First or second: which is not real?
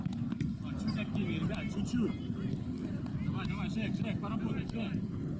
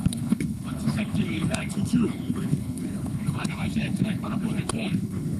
second